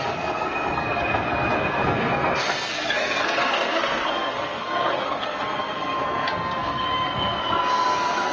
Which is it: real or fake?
fake